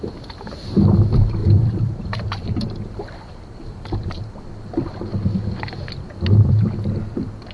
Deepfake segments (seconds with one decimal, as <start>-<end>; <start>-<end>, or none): 0.0-4.2